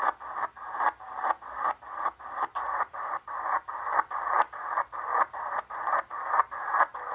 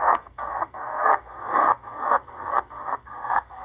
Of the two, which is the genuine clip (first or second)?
first